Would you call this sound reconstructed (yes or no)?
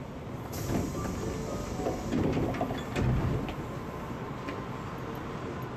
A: no